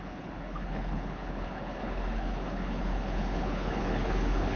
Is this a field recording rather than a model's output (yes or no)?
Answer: no